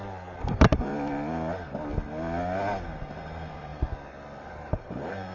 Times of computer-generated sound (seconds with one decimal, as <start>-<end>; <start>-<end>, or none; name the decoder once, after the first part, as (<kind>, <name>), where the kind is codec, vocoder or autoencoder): 0.0-0.9 (vocoder, BigVGAN v2); 3.0-3.7; 4.5-5.3

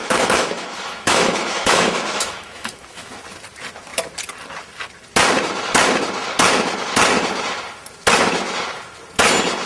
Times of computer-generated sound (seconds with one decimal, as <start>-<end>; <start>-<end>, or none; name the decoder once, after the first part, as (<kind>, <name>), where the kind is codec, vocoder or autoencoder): 0.0-3.2 (autoencoder, DAC-VAE)

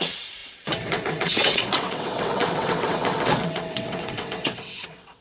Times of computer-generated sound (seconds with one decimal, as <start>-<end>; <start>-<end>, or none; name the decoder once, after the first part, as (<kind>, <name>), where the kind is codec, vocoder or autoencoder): 0.0-5.2 (vocoder, WaveNeXt)

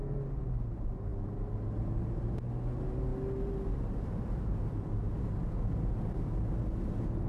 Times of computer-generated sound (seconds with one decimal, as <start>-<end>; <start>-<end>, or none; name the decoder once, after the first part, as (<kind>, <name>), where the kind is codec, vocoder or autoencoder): none

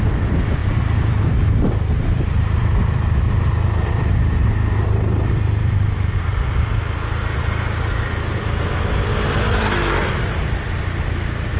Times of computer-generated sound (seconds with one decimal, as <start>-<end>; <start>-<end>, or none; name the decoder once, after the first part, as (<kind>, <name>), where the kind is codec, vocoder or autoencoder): 0.0-6.3 (vocoder, BigVGAN v2); 9.4-11.6

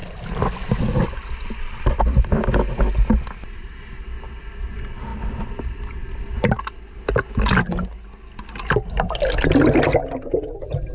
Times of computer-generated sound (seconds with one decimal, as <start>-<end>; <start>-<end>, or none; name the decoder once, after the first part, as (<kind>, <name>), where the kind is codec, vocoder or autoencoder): 5.1-6.6 (vocoder, BigVGAN v2)

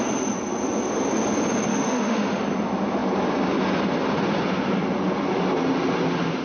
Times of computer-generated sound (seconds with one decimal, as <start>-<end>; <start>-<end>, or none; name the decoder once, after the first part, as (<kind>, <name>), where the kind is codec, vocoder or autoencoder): 1.7-2.4 (autoencoder, DAC-VAE)